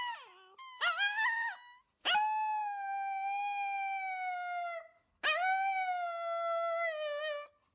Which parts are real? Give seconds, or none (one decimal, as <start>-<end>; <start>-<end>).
0.0-7.7

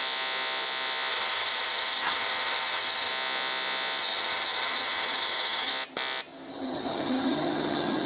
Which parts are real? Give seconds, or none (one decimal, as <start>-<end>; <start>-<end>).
0.0-1.1; 3.1-4.0; 5.7-6.5

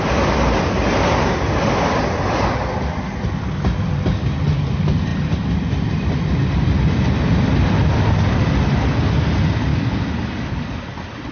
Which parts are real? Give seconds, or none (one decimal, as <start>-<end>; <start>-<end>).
0.0-11.3

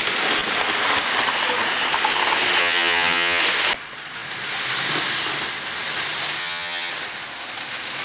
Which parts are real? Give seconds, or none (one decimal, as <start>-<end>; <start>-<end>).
0.0-2.6; 3.4-6.4; 6.9-8.0